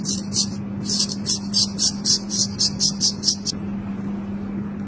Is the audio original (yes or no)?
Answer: yes